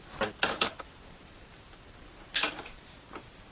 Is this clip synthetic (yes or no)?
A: no